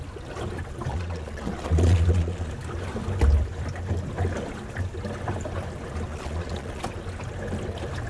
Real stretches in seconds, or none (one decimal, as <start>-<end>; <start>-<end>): 0.0-0.9; 2.5-6.1; 6.8-8.1